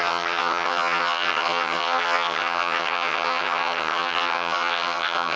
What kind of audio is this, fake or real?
fake